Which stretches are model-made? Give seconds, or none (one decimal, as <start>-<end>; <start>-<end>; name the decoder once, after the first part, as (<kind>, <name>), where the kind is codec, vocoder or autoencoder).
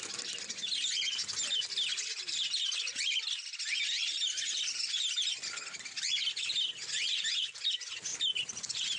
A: none